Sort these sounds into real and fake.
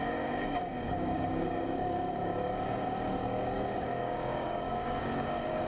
fake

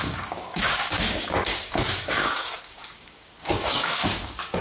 fake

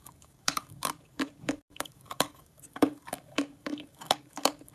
fake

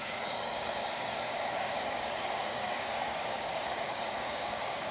fake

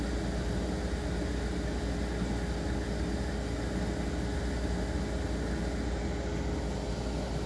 real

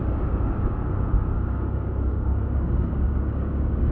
fake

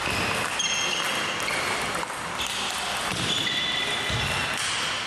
real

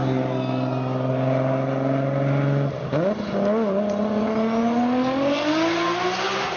real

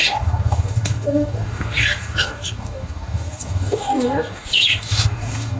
fake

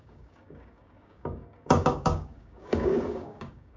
fake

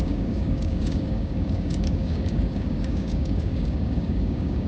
fake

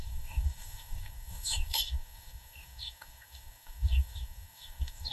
fake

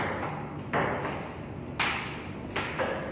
real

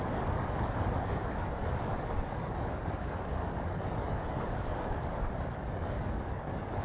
fake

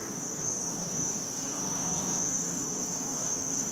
fake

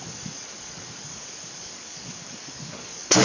fake